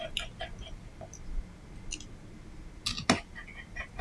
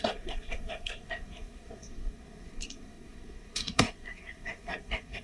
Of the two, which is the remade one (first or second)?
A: second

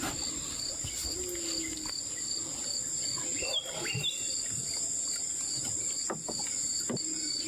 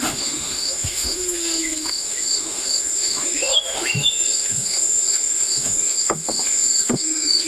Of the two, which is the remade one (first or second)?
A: second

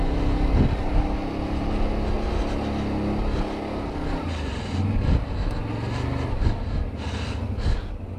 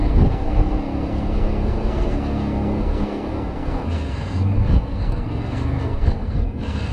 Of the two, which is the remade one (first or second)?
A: second